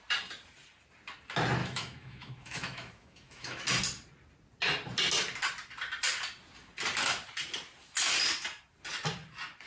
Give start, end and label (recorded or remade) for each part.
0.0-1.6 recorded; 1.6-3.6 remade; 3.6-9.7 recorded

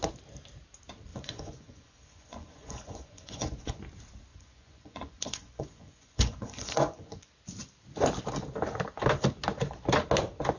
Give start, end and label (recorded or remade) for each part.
0.0-1.1 recorded; 1.1-3.8 remade; 3.8-4.3 recorded; 4.3-7.3 remade; 7.3-10.6 recorded

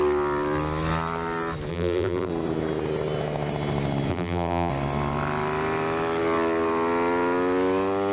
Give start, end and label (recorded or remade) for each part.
0.0-1.7 recorded; 1.7-2.3 remade; 2.3-4.1 recorded; 4.1-4.7 remade; 4.7-8.1 recorded

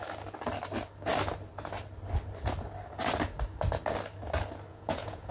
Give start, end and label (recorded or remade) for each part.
0.0-4.7 recorded; 4.7-5.3 remade